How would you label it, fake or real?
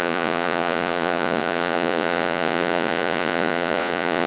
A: fake